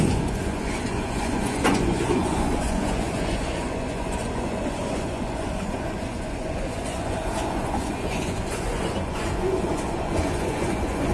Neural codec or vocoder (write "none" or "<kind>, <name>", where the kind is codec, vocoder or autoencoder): vocoder, Vocos